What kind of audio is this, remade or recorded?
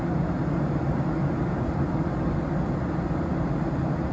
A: recorded